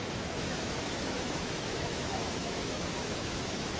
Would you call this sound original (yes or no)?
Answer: no